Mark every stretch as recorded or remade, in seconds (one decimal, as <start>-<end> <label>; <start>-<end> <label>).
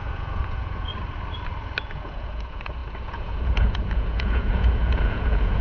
0.0-0.9 remade; 0.9-1.8 recorded; 1.8-5.6 remade